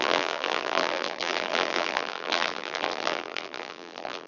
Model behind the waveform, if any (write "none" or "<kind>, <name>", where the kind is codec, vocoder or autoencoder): vocoder, BigVGAN v2